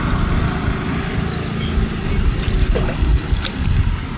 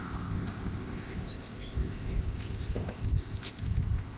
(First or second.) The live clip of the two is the first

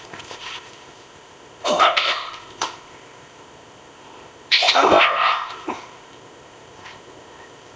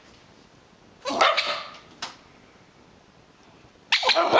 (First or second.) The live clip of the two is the second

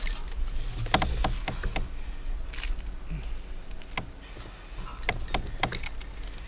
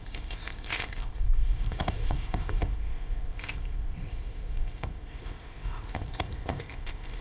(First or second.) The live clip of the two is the first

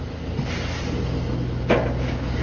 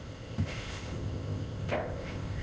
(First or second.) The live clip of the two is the first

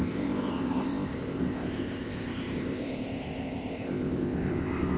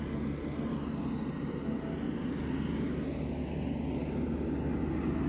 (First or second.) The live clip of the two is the second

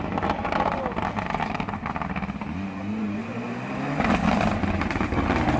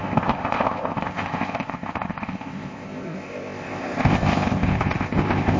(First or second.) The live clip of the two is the first